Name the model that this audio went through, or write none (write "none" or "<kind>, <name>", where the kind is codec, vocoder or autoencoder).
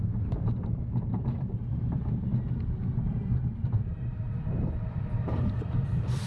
vocoder, BigVGAN v2